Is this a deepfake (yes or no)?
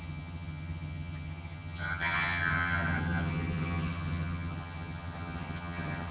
yes